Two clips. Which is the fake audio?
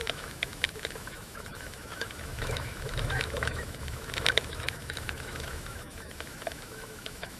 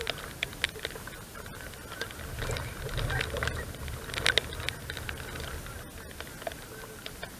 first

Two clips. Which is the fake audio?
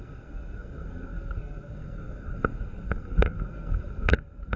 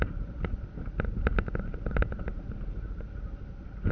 first